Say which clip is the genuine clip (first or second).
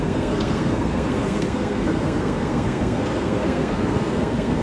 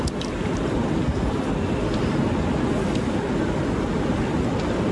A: second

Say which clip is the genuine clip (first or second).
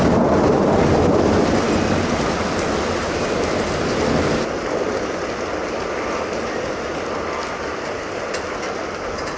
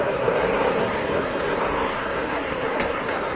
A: first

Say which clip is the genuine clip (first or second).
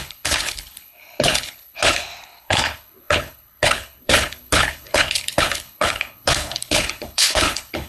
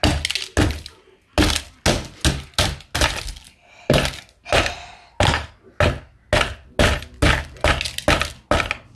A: second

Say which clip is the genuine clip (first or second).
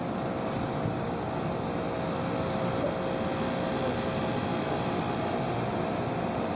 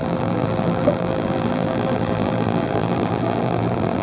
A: first